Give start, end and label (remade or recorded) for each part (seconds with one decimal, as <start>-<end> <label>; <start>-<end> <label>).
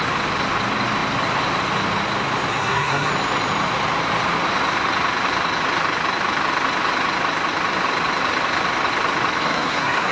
0.0-2.5 recorded; 2.5-3.1 remade; 3.1-9.4 recorded; 9.4-10.1 remade